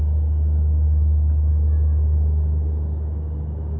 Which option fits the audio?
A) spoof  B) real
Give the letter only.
B